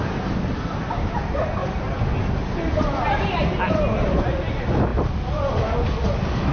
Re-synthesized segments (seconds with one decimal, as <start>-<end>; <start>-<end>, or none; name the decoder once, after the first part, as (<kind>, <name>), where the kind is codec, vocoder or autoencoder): none

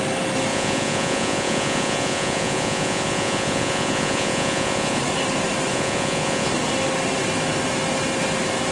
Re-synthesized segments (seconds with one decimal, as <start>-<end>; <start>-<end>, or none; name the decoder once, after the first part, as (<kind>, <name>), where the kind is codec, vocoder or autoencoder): 0.5-5.0 (vocoder, Vocos); 5.7-6.5

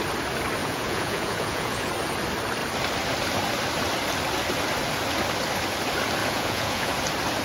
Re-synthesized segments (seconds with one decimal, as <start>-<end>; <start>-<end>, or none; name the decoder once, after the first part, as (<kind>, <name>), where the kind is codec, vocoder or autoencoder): 0.6-1.9 (vocoder, Vocos); 6.2-6.9

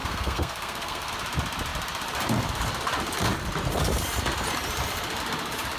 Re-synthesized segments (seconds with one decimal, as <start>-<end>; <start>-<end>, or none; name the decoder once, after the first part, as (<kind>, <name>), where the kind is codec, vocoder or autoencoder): 0.0-1.1 (codec, SNAC)

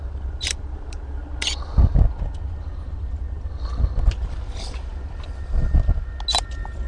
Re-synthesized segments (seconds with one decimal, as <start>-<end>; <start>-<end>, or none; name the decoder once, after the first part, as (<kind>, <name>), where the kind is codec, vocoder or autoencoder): none

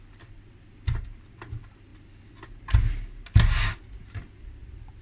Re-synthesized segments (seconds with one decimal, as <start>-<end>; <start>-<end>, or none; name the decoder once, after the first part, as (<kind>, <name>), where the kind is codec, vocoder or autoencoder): none